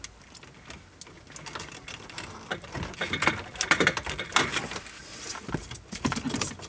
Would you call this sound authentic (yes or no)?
yes